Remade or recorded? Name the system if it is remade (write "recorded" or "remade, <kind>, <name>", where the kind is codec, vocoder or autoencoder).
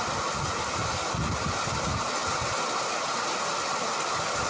recorded